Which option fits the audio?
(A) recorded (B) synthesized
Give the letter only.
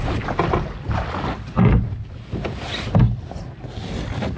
A